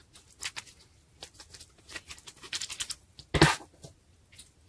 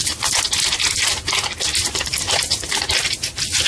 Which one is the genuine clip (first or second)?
first